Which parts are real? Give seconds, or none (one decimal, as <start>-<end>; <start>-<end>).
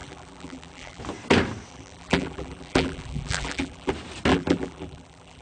1.0-1.7; 3.9-4.3